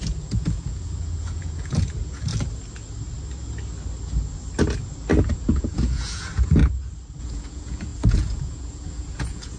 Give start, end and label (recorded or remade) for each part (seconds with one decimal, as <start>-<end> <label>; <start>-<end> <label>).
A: 0.0-2.3 remade; 2.3-5.2 recorded; 5.2-6.6 remade; 6.6-7.2 recorded; 7.2-9.6 remade

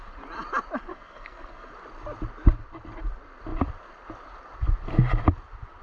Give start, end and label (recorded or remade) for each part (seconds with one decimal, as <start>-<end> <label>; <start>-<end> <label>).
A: 0.0-0.9 recorded; 0.9-1.7 remade; 1.7-5.8 recorded

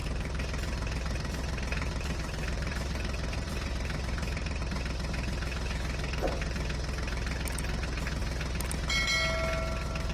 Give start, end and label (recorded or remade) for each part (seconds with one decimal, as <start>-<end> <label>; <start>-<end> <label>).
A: 0.0-4.6 remade; 4.6-10.1 recorded

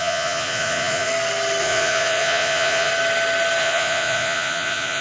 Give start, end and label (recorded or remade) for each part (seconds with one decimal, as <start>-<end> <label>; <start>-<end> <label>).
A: 0.0-1.1 remade; 1.1-1.6 recorded; 1.6-2.9 remade; 2.9-3.6 recorded; 3.6-5.0 remade

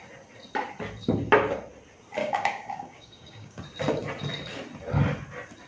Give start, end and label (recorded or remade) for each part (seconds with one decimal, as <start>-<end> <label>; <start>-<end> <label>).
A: 0.0-2.2 recorded; 2.2-3.6 remade; 3.6-5.7 recorded

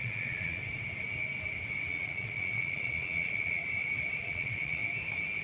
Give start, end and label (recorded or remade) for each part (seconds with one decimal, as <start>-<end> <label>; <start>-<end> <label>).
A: 0.0-0.6 remade; 0.6-1.9 recorded; 1.9-3.6 remade; 3.6-4.2 recorded; 4.2-4.8 remade; 4.8-5.4 recorded